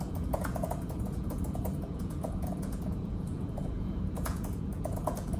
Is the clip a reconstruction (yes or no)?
yes